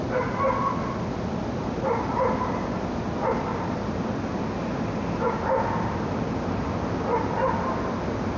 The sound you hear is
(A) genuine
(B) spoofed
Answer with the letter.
A